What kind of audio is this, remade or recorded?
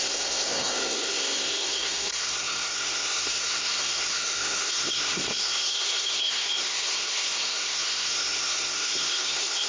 remade